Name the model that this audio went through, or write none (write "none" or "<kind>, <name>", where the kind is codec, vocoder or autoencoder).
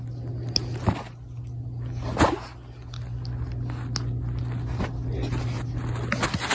none